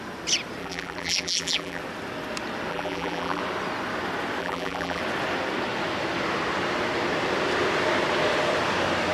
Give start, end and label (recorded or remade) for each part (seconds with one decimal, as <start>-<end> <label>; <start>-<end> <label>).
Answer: 0.0-0.6 recorded; 0.6-1.8 remade; 1.8-2.7 recorded; 2.7-3.4 remade; 3.4-4.4 recorded; 4.4-5.0 remade; 5.0-9.1 recorded